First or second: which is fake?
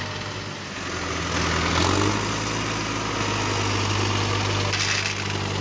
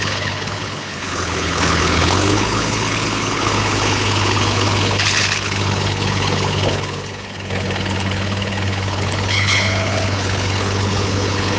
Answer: second